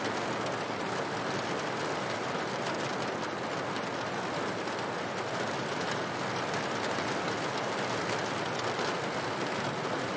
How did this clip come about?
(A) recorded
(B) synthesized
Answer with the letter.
A